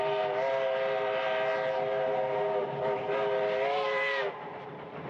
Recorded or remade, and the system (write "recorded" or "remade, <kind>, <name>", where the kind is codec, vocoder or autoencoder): recorded